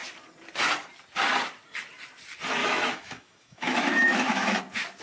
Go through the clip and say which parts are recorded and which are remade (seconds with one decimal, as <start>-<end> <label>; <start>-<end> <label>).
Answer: 0.0-2.6 recorded; 2.6-4.6 remade; 4.6-5.0 recorded